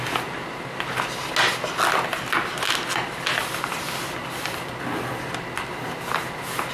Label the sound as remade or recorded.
recorded